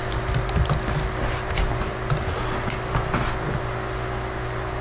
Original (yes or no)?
yes